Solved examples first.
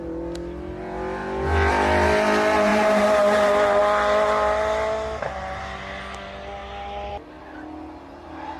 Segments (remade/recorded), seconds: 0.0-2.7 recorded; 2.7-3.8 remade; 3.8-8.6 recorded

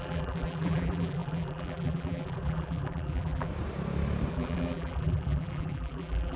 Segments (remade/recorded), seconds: 0.0-3.5 remade; 3.5-4.3 recorded; 4.3-6.4 remade